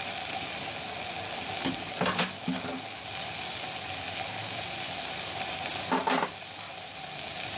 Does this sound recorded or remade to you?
recorded